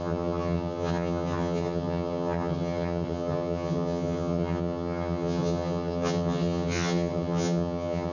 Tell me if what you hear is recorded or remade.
remade